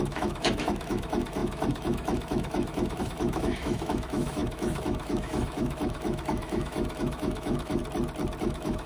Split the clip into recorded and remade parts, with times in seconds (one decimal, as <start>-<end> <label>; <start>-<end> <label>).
0.0-7.8 remade; 7.8-8.4 recorded; 8.4-8.9 remade